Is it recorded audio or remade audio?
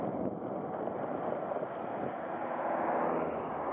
recorded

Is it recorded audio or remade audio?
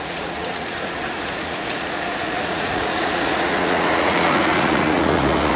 remade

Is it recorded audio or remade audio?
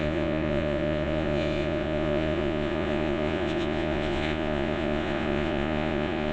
remade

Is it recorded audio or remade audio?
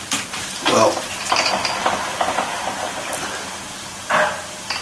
recorded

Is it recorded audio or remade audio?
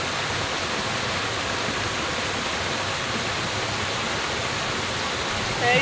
recorded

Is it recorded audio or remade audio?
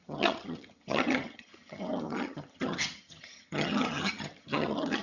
remade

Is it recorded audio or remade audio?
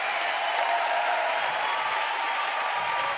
remade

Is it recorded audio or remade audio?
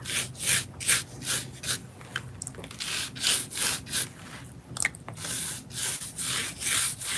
recorded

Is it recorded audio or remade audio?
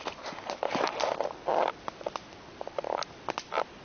recorded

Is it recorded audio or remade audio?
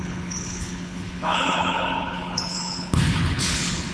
remade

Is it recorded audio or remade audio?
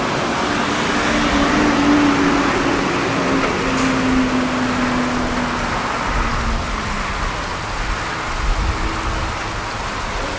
recorded